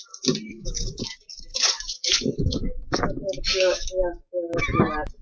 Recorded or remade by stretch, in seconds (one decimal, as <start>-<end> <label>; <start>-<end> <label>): 0.0-0.5 recorded; 0.5-1.0 remade; 1.0-1.5 recorded; 1.5-4.6 remade; 4.6-5.2 recorded